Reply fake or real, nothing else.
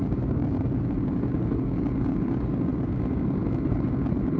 fake